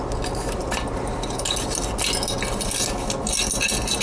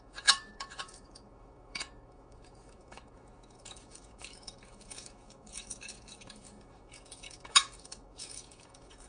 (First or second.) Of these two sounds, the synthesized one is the second